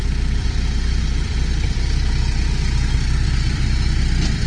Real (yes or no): no